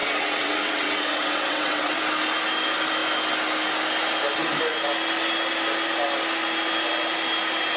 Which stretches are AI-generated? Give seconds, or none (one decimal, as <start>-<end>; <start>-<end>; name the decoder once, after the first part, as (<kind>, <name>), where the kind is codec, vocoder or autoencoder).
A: 0.0-2.0 (vocoder, WaveNeXt)